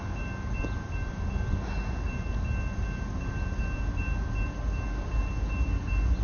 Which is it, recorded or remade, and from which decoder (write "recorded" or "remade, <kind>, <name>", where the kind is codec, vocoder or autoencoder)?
recorded